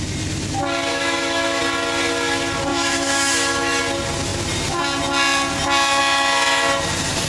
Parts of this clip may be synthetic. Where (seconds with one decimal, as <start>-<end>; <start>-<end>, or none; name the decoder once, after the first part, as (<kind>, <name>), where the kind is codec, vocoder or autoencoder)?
0.9-1.6 (autoencoder, DAC-VAE); 2.7-3.8